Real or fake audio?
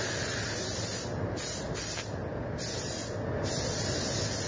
real